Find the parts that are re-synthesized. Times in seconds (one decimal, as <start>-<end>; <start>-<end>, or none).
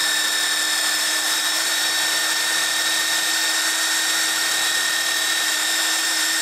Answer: 1.0-2.2; 5.4-6.4